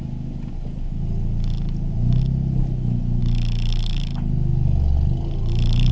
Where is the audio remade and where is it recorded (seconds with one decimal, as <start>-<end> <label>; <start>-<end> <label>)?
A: 0.0-5.9 recorded